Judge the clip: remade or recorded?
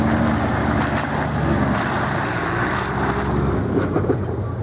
recorded